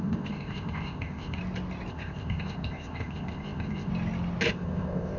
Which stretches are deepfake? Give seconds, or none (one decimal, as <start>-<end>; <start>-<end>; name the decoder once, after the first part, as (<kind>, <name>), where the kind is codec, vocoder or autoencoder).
0.0-1.4 (codec, ZipCodec); 1.9-3.9; 4.5-5.2